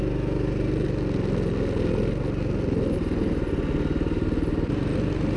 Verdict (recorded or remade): recorded